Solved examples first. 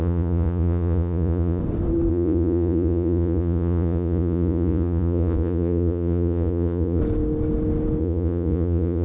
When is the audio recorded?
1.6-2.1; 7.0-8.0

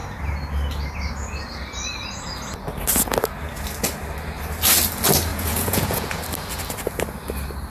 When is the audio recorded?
0.0-5.3; 6.2-7.7

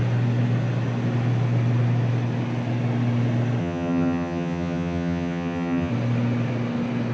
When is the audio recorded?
0.0-3.6; 5.9-7.1

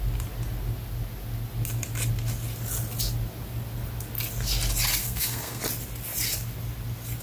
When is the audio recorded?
0.0-5.0; 5.6-7.2

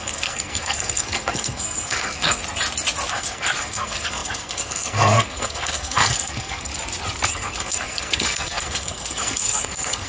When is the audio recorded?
2.4-3.1; 6.7-7.3

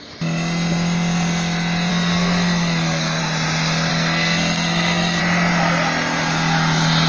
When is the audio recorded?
0.0-1.9; 3.2-3.9; 5.2-7.1

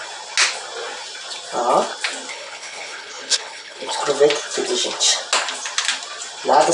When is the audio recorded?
0.0-2.3; 4.0-6.7

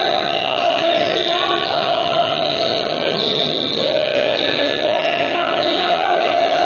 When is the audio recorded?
none